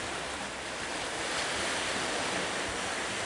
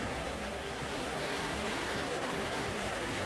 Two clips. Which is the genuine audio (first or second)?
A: first